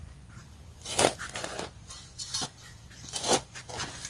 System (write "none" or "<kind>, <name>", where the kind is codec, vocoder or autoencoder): vocoder, Vocos